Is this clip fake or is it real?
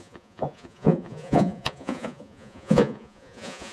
fake